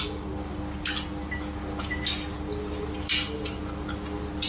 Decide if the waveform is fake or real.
real